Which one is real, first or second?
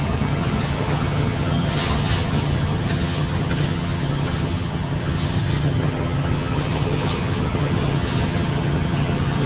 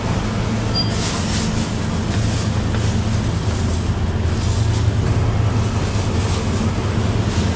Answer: second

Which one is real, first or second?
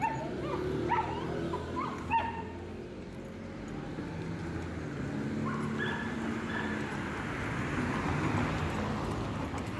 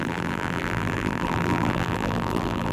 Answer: first